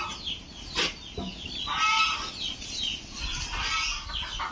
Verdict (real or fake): real